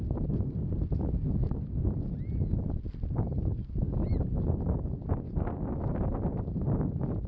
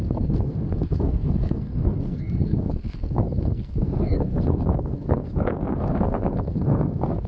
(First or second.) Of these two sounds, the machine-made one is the second